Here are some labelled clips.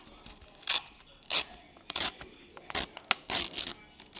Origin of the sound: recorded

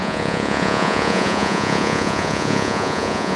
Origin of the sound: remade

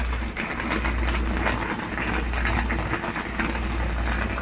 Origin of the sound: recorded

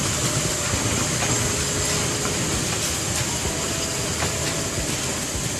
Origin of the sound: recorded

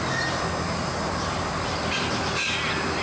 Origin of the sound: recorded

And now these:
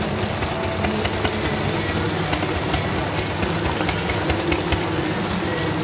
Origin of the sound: recorded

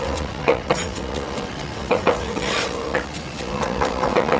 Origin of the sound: remade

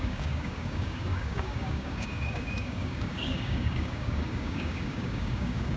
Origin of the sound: remade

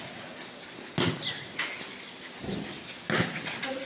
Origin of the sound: recorded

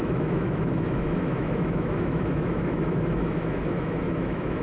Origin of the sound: remade